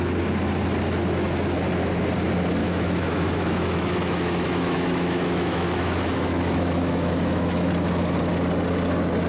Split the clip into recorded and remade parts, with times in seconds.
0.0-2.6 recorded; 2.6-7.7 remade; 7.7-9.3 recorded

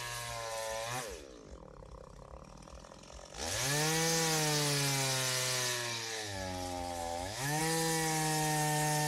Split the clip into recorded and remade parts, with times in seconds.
0.0-7.0 recorded; 7.0-7.6 remade; 7.6-9.1 recorded